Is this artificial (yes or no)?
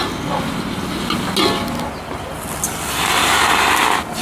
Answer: no